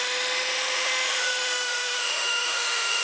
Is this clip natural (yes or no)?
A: no